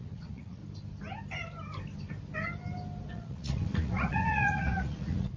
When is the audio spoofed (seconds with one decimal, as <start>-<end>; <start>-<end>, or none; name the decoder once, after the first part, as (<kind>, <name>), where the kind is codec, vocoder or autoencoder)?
0.0-0.6 (vocoder, Vocos); 3.1-5.4